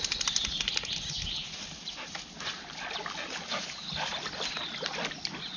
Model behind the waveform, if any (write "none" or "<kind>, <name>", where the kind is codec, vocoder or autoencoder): none